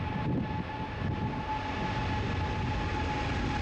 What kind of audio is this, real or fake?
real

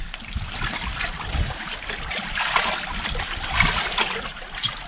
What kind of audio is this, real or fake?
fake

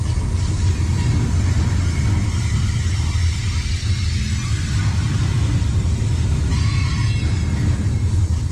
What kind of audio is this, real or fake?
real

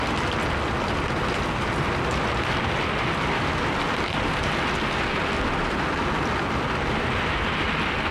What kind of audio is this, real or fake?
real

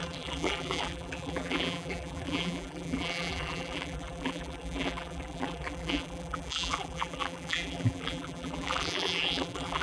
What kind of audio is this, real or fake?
fake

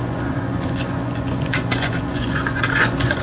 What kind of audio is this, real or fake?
fake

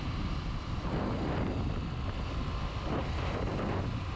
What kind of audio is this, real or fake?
fake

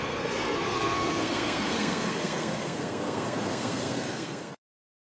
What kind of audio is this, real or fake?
fake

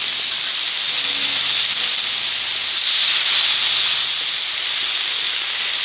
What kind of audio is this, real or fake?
real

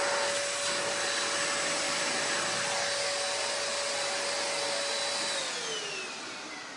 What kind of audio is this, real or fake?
real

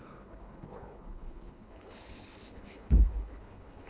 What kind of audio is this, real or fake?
fake